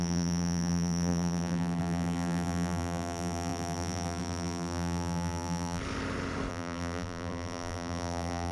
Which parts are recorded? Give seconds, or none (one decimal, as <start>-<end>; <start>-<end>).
5.8-6.5